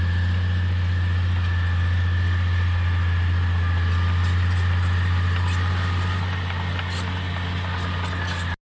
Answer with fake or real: real